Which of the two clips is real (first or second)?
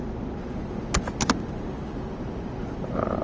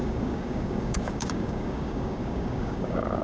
first